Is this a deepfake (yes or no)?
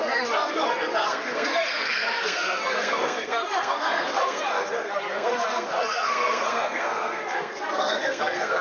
yes